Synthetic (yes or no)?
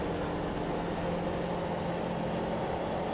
no